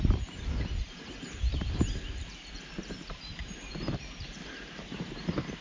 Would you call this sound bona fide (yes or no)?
no